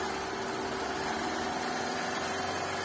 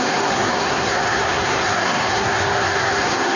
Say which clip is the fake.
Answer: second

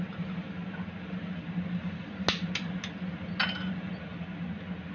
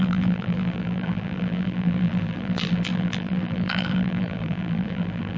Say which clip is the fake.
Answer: second